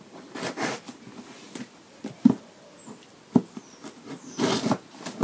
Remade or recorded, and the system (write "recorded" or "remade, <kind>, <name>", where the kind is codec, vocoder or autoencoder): recorded